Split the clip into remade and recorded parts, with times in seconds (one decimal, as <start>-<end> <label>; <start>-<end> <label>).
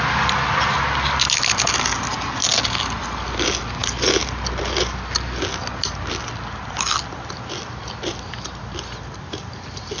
0.0-10.0 recorded